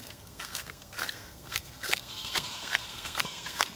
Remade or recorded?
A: remade